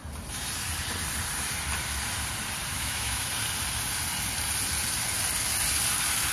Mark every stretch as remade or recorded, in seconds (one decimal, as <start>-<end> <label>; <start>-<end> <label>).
0.0-2.7 recorded; 2.7-3.3 remade; 3.3-6.3 recorded